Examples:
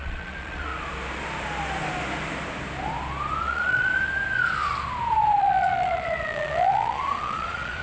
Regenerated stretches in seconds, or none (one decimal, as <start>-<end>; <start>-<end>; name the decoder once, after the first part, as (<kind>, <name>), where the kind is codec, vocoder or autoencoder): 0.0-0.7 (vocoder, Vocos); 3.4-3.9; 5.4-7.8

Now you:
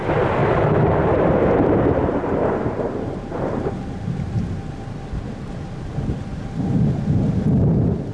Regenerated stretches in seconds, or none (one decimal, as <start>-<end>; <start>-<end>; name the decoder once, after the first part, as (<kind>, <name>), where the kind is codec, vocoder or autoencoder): 0.4-4.5 (vocoder, BigVGAN v2)

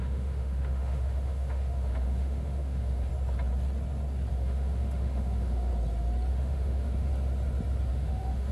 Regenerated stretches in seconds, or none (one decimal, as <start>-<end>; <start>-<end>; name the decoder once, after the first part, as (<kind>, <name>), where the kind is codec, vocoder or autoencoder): 0.0-3.1 (autoencoder, DAC-VAE); 4.3-5.7; 6.3-7.1; 7.9-8.5

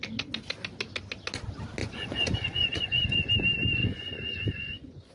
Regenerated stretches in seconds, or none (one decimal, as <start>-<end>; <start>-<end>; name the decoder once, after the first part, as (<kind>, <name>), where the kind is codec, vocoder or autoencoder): 1.8-3.3 (vocoder, Vocos); 3.8-5.1

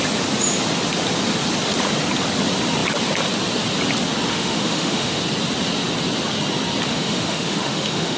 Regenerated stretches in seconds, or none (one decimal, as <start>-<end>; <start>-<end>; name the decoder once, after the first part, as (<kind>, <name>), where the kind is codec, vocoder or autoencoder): 4.3-5.2 (autoencoder, DAC-VAE); 6.9-8.2

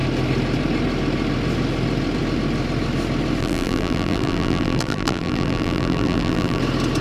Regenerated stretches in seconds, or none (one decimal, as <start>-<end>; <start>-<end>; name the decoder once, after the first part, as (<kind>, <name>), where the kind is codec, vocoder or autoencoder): 3.4-6.6 (vocoder, BigVGAN v2)